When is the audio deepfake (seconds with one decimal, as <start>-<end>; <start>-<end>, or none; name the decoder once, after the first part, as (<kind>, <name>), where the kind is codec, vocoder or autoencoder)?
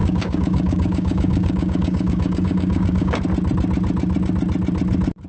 0.0-3.2 (codec, DAC)